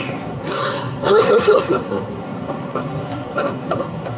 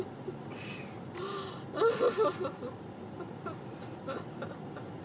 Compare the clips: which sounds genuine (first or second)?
second